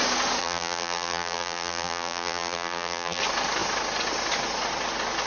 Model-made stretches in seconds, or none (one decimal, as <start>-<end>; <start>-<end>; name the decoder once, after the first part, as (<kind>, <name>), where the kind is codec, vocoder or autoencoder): 0.4-3.2 (vocoder, BigVGAN v2)